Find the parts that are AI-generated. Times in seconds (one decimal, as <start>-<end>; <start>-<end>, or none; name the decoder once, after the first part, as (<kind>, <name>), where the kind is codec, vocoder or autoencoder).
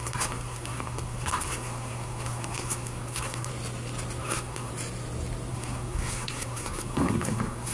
0.0-3.5 (codec, SNAC); 4.2-4.7; 5.5-7.7